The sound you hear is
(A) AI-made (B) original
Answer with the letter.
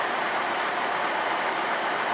A